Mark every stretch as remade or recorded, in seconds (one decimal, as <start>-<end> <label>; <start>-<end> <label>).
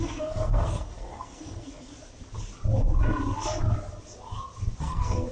0.0-1.9 remade; 1.9-4.8 recorded; 4.8-5.3 remade